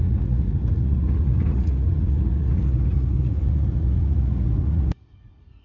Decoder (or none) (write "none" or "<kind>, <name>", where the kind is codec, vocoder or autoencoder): vocoder, Vocos